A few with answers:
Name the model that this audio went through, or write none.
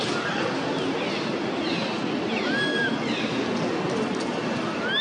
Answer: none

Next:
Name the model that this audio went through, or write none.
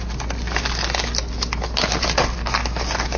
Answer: none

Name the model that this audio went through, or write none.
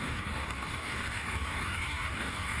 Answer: codec, DAC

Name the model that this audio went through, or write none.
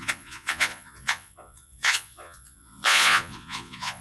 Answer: vocoder, Vocos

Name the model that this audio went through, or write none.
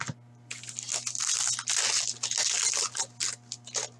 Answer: none